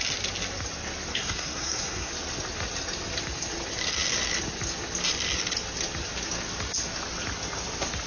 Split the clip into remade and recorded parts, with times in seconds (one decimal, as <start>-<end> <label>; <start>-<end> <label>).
0.0-1.1 recorded; 1.1-2.1 remade; 2.1-8.1 recorded